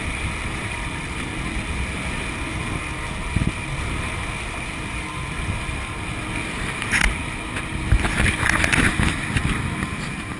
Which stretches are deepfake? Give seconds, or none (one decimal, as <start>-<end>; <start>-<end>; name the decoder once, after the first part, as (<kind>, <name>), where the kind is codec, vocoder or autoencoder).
none